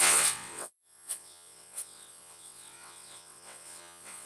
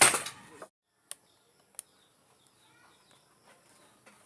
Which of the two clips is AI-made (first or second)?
first